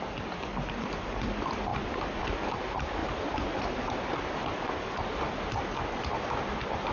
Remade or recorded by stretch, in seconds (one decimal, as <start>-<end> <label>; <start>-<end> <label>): 0.0-6.9 recorded